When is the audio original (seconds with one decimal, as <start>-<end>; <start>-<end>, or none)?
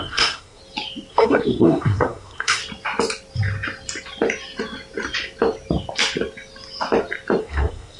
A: 0.6-1.1; 2.6-7.4